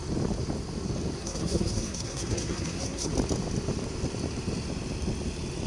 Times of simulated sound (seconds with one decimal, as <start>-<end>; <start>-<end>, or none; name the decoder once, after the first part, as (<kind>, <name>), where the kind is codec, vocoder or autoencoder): 1.2-3.1 (codec, SNAC)

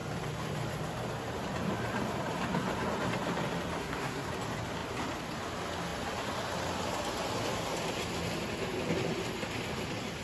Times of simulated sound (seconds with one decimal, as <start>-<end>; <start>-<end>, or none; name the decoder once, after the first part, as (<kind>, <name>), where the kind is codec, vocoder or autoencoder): 3.8-4.3 (codec, SNAC)

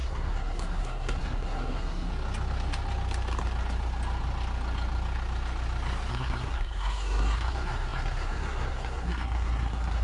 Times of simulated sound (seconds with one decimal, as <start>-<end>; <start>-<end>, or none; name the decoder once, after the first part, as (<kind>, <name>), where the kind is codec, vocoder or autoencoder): 0.0-2.1 (codec, SNAC); 6.1-10.0

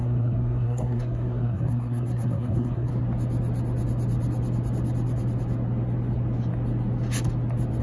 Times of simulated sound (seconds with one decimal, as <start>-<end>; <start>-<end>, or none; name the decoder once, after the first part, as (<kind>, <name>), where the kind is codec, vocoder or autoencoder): 0.0-2.9 (codec, SNAC)

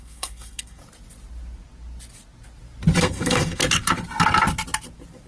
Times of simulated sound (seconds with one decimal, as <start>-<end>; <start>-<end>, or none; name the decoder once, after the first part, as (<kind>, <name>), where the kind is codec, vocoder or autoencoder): 0.0-0.8 (codec, SNAC); 3.0-3.6

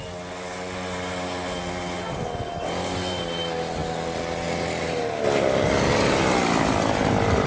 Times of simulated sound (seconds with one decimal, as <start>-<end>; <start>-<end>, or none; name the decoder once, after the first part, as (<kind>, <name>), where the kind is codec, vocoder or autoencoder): none

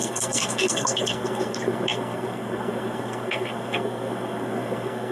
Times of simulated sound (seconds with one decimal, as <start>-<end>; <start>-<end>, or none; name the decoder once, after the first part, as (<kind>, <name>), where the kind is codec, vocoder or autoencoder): 0.0-5.1 (codec, SNAC)